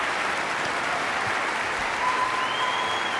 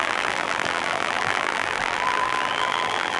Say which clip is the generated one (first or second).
second